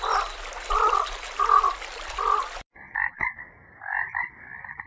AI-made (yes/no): no